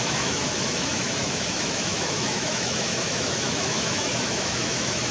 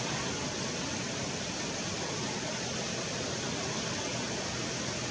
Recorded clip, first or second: second